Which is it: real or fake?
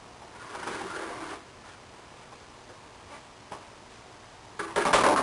real